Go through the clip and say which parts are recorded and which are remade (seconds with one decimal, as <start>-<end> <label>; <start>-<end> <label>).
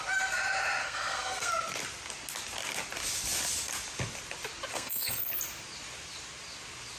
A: 0.0-0.8 recorded; 0.8-1.5 remade; 1.5-4.7 recorded; 4.7-5.3 remade; 5.3-7.0 recorded